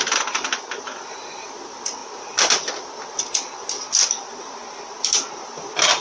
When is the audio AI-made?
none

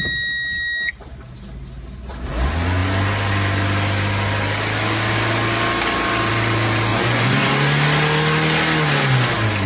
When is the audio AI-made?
6.9-7.5 (vocoder, Vocos)